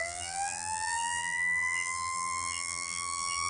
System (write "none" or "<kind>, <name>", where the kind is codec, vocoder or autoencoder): vocoder, BigVGAN v2